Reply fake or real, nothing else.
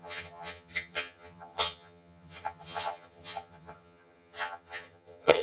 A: fake